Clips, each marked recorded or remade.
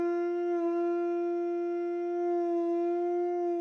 recorded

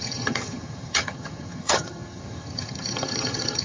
remade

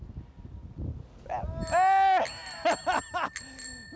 recorded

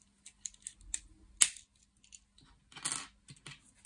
recorded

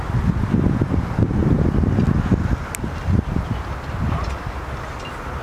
recorded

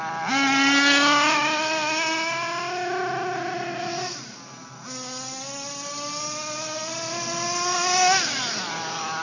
recorded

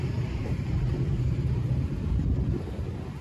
remade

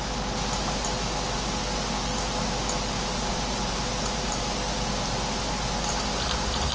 recorded